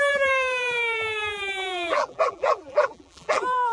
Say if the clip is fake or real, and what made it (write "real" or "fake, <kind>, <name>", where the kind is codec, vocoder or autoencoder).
fake, vocoder, BigVGAN v2